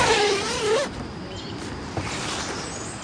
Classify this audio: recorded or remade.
recorded